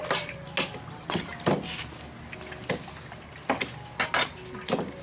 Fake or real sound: real